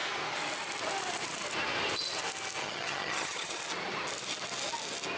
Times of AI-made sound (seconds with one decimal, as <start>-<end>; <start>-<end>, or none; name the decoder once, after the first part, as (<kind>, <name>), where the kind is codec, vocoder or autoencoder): 2.6-3.6 (vocoder, HiFi-GAN)